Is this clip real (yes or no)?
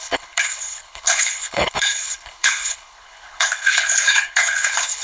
no